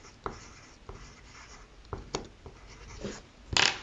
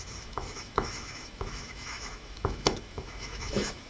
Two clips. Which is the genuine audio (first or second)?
first